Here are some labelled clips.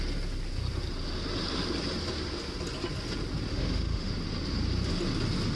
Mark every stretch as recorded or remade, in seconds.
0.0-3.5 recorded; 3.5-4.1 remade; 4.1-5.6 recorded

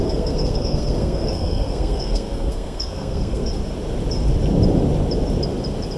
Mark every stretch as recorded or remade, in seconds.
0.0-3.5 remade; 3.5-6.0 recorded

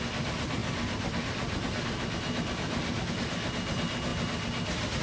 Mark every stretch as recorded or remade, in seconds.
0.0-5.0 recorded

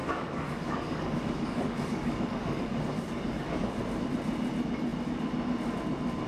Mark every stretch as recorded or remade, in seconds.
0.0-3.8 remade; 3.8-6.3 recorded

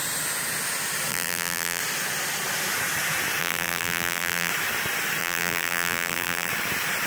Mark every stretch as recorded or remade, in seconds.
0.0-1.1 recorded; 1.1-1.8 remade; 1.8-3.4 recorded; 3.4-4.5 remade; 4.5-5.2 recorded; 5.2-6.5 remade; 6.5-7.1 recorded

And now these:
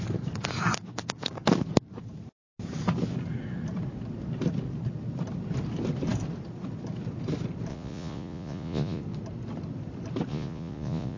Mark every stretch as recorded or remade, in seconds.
0.0-7.7 recorded; 7.7-9.0 remade; 9.0-10.3 recorded; 10.3-11.2 remade